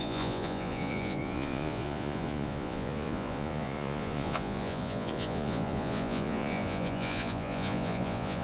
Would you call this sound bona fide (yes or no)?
no